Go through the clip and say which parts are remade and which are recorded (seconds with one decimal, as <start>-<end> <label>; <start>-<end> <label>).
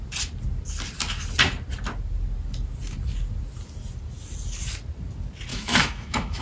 0.0-5.5 recorded; 5.5-6.4 remade